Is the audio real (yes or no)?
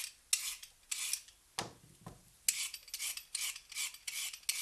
yes